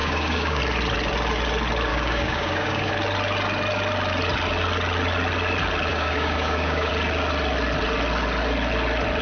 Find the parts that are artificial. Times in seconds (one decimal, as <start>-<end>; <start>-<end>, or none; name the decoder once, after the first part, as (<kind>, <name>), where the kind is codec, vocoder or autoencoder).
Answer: 0.0-0.6 (codec, DAC); 1.9-2.9; 5.9-6.9